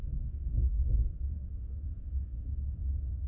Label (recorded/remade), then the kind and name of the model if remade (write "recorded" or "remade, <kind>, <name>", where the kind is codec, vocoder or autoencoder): remade, autoencoder, DAC-VAE